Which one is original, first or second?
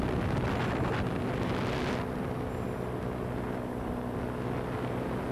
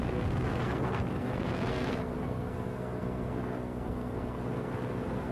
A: first